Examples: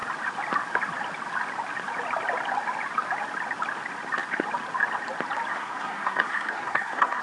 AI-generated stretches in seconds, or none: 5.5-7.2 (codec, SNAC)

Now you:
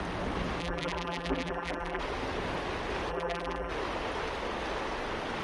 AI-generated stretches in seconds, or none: 0.6-2.0 (vocoder, BigVGAN v2); 3.1-3.7

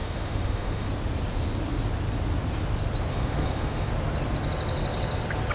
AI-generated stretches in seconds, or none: 0.0-0.9 (autoencoder, DAC-VAE); 3.1-3.9

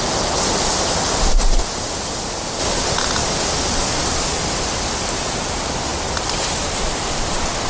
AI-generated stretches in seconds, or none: 5.9-7.1 (vocoder, BigVGAN v2)

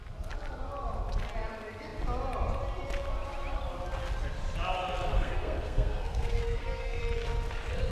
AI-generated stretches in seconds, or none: 5.1-7.0 (codec, SNAC)

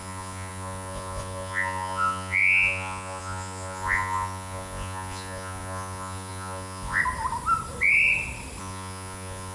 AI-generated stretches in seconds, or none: 0.0-7.0 (vocoder, Vocos); 8.6-9.5

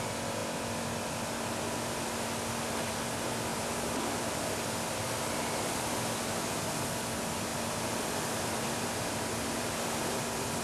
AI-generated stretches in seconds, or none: 3.5-6.3 (vocoder, BigVGAN v2); 7.5-10.2